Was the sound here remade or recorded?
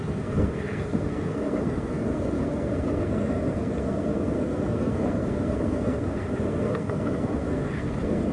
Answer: remade